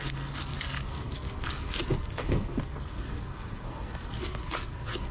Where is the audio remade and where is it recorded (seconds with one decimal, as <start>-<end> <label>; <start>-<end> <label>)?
0.0-5.1 remade